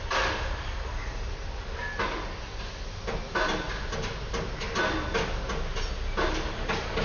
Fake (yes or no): no